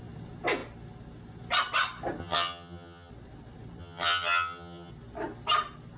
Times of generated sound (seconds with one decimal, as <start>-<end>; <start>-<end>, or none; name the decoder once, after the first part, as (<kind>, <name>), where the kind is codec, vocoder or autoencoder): 2.2-3.1 (vocoder, HiFi-GAN); 3.8-4.9